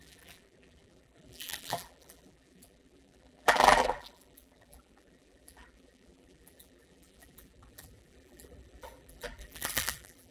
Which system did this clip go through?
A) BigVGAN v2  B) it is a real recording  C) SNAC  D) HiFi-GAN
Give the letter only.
A